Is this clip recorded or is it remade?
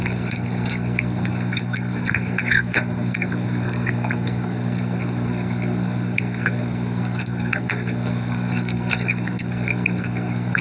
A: remade